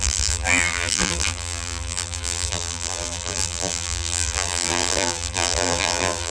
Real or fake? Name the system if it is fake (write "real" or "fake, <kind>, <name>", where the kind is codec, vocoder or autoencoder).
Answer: fake, vocoder, BigVGAN v2